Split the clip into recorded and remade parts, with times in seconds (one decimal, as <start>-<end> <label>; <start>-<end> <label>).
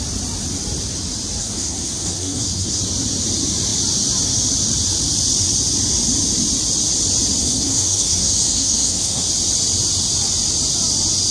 0.0-1.4 recorded; 1.4-2.8 remade; 2.8-7.4 recorded; 7.4-9.3 remade; 9.3-11.3 recorded